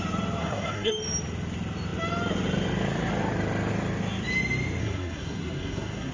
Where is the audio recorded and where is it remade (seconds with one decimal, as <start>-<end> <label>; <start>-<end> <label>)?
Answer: 0.0-0.4 recorded; 0.4-0.9 remade; 0.9-4.8 recorded; 4.8-6.1 remade